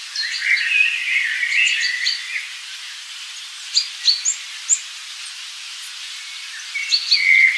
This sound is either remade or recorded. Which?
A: recorded